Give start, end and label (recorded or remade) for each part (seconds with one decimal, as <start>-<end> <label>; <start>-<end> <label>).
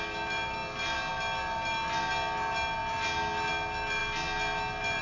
0.0-5.0 recorded